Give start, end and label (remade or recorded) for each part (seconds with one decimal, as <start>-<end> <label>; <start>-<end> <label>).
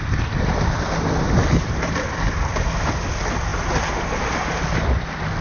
0.0-5.4 recorded